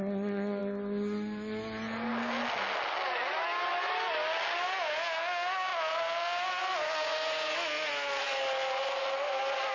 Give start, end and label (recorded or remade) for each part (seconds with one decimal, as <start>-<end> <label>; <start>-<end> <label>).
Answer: 0.0-9.7 recorded